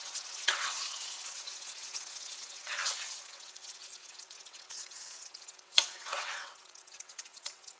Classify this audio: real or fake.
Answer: fake